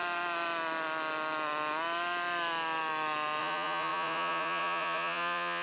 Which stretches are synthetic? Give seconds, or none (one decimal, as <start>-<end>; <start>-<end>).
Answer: 3.4-5.6